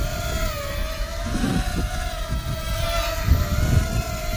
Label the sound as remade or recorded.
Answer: recorded